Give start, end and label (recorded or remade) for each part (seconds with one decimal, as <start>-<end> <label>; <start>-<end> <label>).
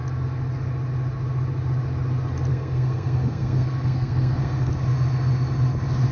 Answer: 0.0-2.5 recorded; 2.5-4.7 remade; 4.7-6.1 recorded